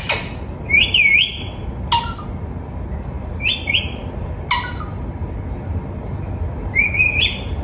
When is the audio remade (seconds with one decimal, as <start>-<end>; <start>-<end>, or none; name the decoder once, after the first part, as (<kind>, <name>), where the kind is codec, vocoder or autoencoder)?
none